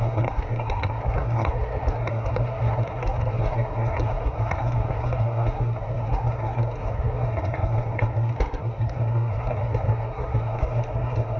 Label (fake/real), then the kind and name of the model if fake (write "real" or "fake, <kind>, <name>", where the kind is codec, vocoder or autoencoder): fake, codec, SNAC